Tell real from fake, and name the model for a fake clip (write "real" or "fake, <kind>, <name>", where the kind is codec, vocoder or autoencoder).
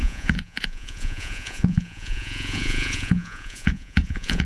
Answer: fake, vocoder, Vocos